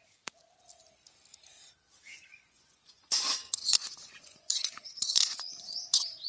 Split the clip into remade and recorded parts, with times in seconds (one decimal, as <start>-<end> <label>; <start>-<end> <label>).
0.0-2.1 recorded; 2.1-6.3 remade